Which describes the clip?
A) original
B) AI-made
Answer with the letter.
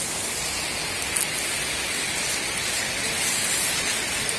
A